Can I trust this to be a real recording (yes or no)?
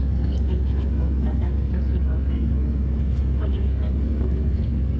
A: no